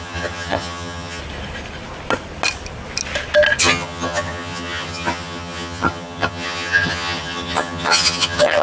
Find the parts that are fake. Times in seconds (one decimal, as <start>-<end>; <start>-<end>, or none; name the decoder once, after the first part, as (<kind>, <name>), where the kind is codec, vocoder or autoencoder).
0.0-1.2 (vocoder, HiFi-GAN); 3.6-8.6